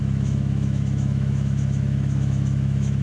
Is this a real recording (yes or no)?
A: no